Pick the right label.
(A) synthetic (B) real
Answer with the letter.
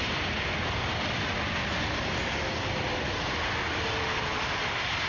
B